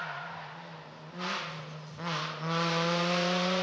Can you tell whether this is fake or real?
real